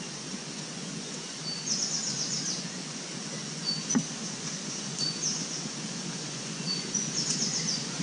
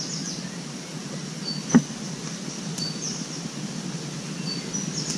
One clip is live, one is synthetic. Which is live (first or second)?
second